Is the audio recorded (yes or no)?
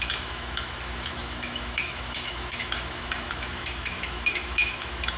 no